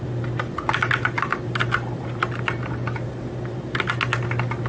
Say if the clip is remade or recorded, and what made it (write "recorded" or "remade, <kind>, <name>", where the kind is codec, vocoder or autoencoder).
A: recorded